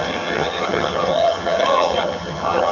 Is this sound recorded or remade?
remade